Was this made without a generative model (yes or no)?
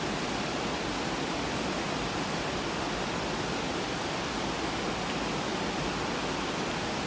yes